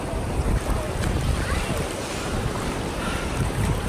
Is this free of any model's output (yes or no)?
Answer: yes